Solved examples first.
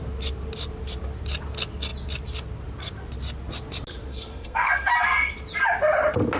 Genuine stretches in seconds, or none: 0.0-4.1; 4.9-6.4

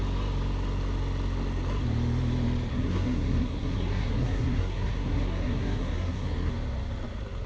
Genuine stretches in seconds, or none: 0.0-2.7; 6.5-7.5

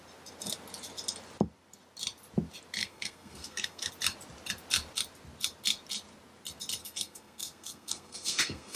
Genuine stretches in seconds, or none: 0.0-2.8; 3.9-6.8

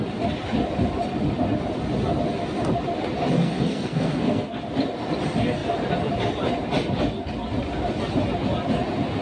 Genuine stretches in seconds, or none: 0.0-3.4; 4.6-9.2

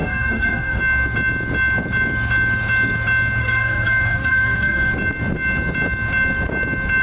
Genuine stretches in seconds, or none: 0.8-3.4; 4.9-7.0

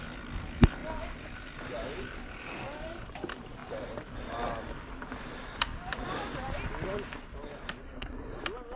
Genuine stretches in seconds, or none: 0.0-7.8; 8.4-8.8

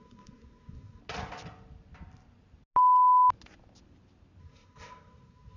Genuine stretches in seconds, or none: 1.0-4.4

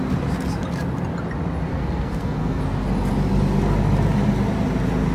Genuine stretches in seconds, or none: 0.0-1.7; 2.6-5.1